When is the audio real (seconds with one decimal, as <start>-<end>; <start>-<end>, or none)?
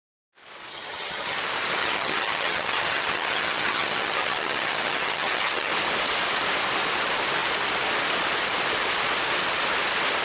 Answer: 0.0-0.7; 1.4-1.8; 5.7-10.2